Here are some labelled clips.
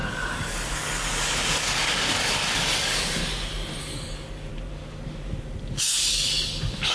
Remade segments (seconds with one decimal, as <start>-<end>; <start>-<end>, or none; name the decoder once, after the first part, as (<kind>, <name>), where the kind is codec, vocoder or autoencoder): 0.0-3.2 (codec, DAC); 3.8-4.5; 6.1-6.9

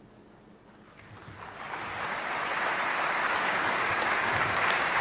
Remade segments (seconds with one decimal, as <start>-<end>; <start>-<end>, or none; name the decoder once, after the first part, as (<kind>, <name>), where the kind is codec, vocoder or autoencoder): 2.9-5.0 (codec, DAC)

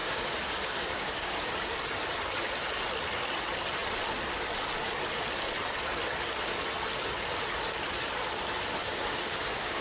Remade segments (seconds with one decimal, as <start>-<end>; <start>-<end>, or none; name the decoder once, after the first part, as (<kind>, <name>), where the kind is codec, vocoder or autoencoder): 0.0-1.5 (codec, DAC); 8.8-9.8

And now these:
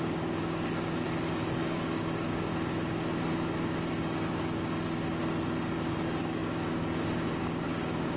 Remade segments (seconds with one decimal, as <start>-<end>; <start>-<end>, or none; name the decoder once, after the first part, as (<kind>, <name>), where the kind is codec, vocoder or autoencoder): 0.0-2.5 (codec, DAC); 4.0-5.2; 6.0-8.2

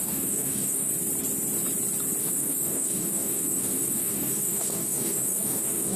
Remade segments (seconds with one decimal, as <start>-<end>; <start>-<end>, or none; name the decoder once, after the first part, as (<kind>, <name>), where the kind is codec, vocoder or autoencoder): 0.0-0.9 (codec, DAC); 2.2-6.0

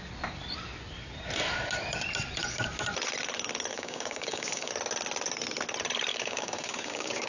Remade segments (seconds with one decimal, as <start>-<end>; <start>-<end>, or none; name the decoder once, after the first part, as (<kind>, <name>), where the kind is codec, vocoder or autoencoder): 3.7-4.7 (codec, DAC); 6.1-7.3

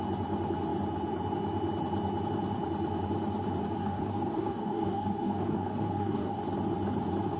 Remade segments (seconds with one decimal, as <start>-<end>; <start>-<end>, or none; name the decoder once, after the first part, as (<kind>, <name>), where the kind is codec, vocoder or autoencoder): 3.8-6.4 (codec, DAC)

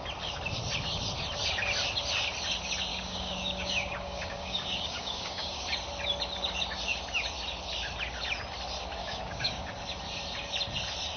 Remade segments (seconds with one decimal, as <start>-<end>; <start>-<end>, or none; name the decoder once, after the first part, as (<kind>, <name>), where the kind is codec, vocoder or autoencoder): 2.9-5.6 (codec, DAC); 9.0-9.7